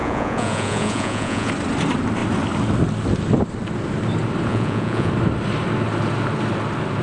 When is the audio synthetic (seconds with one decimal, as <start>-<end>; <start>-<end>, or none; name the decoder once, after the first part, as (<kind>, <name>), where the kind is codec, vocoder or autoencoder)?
0.0-1.5 (vocoder, Vocos); 4.5-5.1